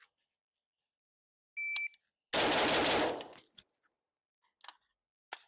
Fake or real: real